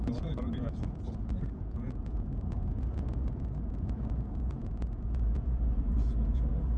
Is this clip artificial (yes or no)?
yes